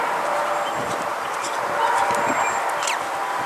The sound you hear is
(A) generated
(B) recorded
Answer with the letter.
B